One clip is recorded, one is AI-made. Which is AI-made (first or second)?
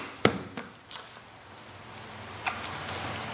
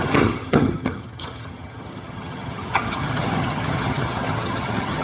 second